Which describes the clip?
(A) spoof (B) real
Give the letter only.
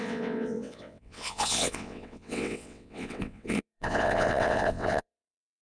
A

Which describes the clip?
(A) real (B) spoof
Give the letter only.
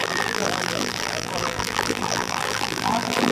B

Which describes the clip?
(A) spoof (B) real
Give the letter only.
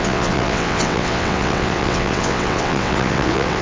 A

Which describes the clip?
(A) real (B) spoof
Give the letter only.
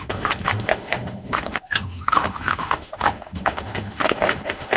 B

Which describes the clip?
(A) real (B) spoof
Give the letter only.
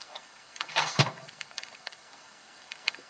B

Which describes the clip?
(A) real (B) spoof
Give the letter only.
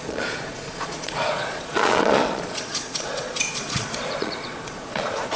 B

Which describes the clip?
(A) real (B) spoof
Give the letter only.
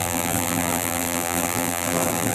B